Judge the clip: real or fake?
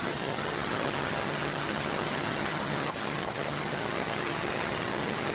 fake